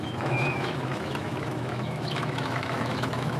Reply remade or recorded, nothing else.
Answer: remade